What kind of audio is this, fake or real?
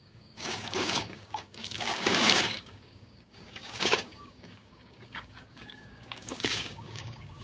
fake